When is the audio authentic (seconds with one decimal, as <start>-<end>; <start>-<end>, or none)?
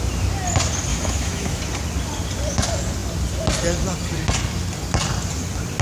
0.0-0.9; 1.6-5.8